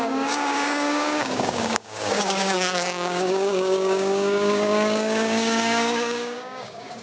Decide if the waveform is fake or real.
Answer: fake